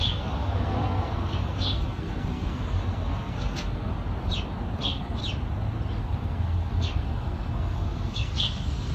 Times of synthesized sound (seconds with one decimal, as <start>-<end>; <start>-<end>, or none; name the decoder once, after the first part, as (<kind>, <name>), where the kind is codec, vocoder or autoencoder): 0.0-3.9 (codec, SNAC); 4.8-5.2; 6.0-8.9